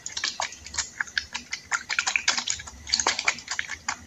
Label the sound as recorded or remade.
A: remade